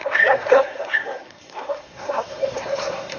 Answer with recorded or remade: remade